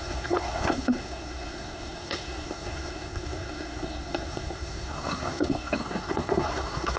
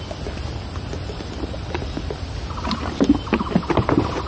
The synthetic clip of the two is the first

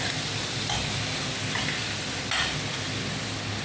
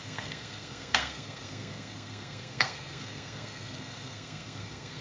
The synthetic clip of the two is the second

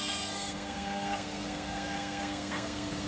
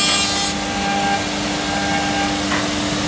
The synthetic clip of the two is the first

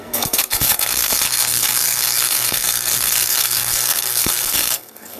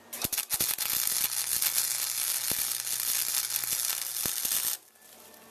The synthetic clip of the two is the first